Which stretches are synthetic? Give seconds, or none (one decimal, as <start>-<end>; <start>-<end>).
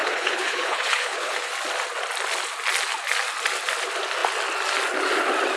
0.0-1.5